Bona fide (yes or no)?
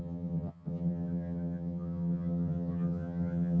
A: no